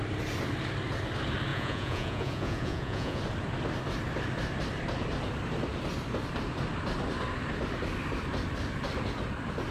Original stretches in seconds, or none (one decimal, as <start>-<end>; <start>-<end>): 0.0-1.5; 3.2-9.7